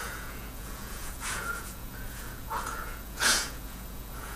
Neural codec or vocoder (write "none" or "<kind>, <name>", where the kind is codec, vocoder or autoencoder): vocoder, Vocos